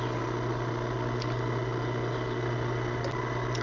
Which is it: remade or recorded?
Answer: recorded